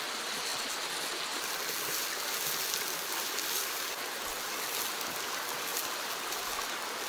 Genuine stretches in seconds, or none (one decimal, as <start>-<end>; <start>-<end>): 0.0-5.7; 6.4-7.1